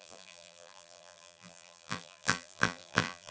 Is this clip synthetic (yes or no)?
yes